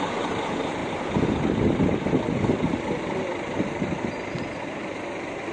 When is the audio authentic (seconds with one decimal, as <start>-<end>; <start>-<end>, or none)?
0.0-5.5